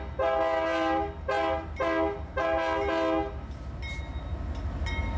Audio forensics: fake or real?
real